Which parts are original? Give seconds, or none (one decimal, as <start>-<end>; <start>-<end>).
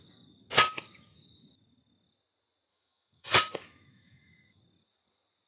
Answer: 0.0-2.7; 4.6-5.5